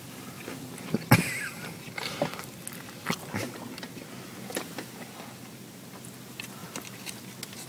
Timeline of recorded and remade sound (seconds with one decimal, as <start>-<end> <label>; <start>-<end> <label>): 0.0-6.6 recorded; 6.6-7.2 remade; 7.2-7.7 recorded